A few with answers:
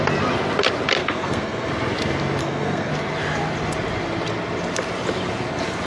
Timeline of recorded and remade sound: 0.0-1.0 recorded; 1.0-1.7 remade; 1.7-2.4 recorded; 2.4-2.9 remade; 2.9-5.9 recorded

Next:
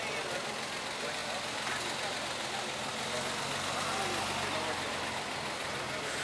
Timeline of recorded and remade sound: 0.0-6.2 recorded